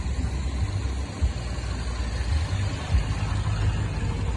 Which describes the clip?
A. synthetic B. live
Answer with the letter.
B